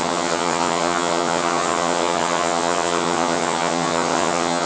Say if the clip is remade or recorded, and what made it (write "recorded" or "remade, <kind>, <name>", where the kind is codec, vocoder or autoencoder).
remade, vocoder, HiFi-GAN